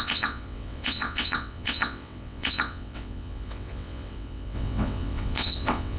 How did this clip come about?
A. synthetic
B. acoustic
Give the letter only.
A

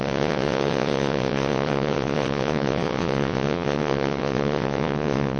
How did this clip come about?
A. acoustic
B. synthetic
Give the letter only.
B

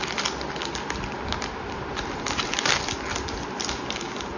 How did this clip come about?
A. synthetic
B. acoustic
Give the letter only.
B